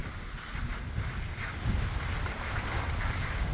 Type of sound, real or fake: real